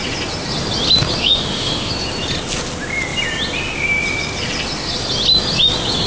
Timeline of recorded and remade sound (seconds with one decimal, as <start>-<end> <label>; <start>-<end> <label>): 0.0-1.2 recorded; 1.2-1.9 remade; 1.9-6.1 recorded